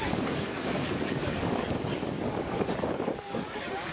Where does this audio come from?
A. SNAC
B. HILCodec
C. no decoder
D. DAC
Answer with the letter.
D